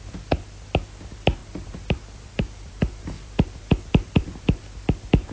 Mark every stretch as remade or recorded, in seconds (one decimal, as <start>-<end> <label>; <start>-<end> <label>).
0.0-1.4 recorded; 1.4-4.6 remade; 4.6-5.3 recorded